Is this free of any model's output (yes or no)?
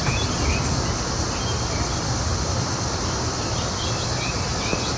yes